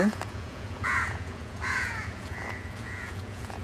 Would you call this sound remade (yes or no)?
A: yes